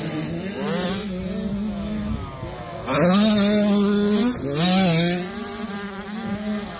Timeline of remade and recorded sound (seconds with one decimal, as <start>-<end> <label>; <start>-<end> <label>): 0.0-6.8 recorded